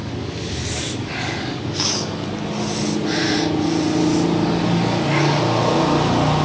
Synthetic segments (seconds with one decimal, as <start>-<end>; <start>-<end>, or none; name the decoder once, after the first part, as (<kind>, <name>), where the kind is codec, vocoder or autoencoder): 0.0-2.3 (codec, DAC); 4.4-5.4